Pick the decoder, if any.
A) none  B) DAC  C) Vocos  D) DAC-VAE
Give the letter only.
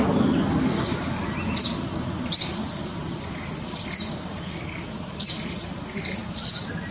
A